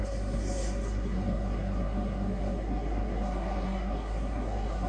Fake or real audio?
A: fake